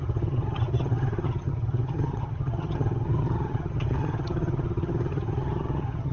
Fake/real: fake